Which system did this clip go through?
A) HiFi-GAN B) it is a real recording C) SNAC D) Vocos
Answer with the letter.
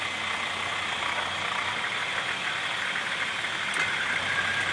B